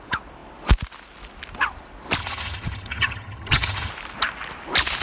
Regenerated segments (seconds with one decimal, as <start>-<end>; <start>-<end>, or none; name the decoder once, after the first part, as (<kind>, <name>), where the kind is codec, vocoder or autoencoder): 2.2-3.9 (vocoder, HiFi-GAN)